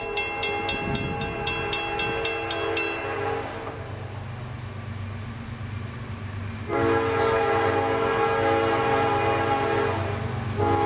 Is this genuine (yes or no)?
yes